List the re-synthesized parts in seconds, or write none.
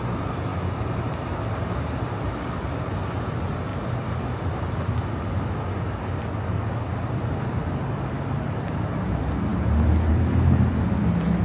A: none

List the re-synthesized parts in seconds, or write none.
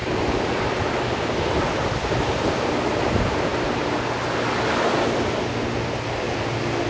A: none